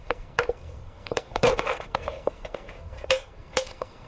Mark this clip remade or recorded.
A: remade